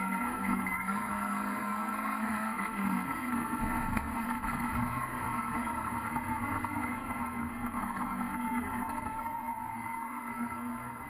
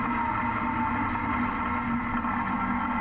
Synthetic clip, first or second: first